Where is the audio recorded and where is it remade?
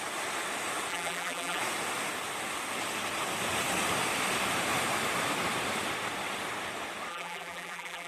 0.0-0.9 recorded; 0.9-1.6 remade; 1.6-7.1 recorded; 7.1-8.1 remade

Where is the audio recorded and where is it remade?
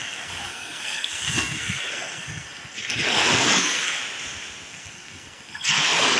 0.0-4.0 remade; 4.0-4.7 recorded; 4.7-6.2 remade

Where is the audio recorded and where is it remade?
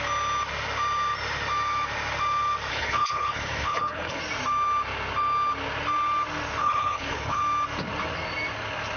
0.0-2.7 recorded; 2.7-4.2 remade; 4.2-6.6 recorded; 6.6-7.4 remade; 7.4-9.0 recorded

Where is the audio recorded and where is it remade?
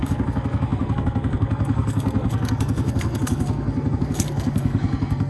0.0-5.3 remade